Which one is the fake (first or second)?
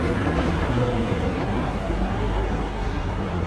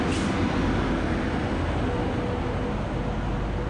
first